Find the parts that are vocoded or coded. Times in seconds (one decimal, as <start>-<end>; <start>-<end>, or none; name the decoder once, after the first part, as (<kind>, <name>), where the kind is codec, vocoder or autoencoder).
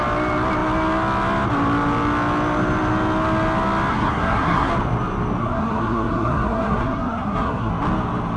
3.9-4.7 (codec, SNAC); 5.4-7.7